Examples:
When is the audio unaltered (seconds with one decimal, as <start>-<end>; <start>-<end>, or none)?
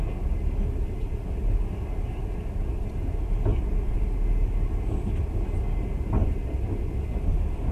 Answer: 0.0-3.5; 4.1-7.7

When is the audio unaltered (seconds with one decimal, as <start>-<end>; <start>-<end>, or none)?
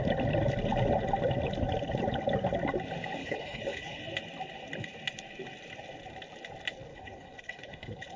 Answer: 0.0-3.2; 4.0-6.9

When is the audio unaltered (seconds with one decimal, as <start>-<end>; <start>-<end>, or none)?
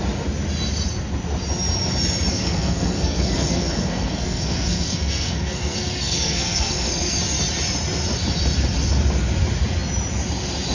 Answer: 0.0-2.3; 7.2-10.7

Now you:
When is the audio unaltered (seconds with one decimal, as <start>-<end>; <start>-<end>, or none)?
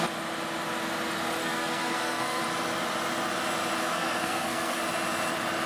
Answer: 0.0-1.4; 2.4-3.8; 4.8-5.7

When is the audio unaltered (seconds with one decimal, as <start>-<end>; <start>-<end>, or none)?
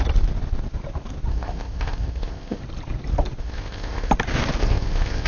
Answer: 0.0-1.3; 2.6-3.4; 4.1-4.6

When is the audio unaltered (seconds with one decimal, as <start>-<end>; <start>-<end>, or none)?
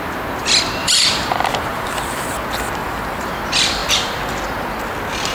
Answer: 0.0-0.8; 1.9-2.8; 3.3-5.3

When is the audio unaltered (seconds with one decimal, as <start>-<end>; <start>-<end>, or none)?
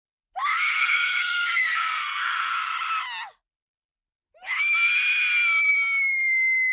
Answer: 0.0-0.7; 2.5-6.7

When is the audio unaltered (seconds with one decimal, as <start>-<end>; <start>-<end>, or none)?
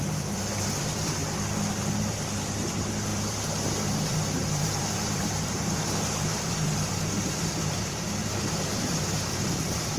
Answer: 1.2-2.1